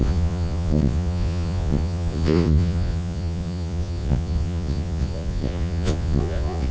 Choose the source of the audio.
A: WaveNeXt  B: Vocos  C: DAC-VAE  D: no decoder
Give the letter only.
B